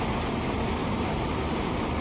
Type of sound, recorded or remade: recorded